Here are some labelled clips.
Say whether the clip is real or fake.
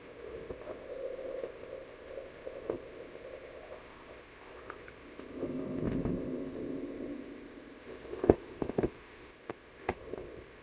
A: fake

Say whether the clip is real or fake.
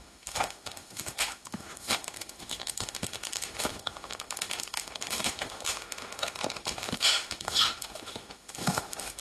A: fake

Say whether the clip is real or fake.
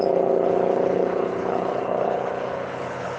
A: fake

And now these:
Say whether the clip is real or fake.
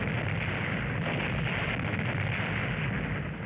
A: real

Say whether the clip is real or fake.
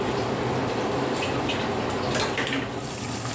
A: real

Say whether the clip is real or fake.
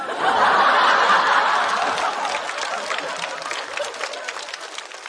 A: real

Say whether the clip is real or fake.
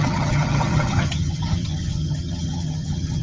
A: fake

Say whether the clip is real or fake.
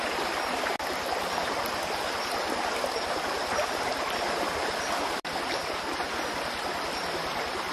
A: real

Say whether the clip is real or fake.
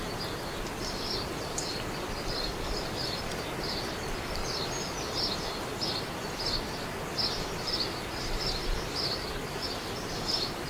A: real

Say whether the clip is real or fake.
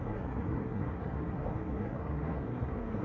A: fake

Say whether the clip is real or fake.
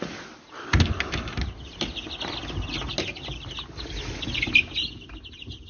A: real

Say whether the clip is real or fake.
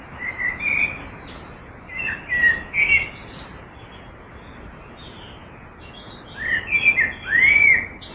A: real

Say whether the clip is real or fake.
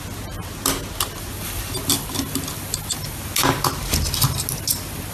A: real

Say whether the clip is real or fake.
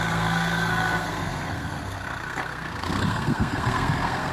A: fake